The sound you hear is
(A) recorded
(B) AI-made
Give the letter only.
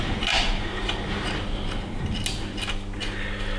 A